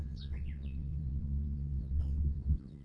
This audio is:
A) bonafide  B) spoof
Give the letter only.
B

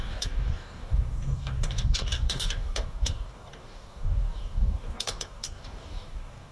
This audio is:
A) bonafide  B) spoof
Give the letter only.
B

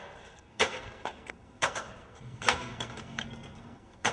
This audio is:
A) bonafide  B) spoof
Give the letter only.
B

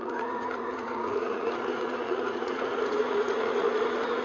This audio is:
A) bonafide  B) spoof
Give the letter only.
B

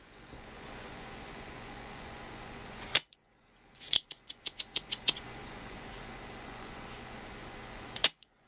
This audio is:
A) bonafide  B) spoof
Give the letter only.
B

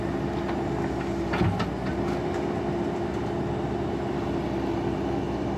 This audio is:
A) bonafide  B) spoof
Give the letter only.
A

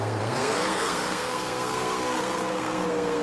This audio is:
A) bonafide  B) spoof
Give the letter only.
B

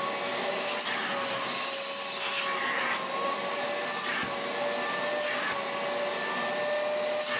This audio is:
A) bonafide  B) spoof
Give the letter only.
A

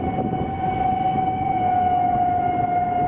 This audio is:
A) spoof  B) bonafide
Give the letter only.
B